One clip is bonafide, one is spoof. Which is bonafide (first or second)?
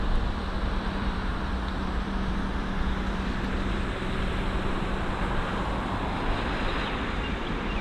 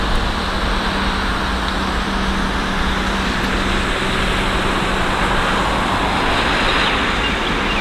second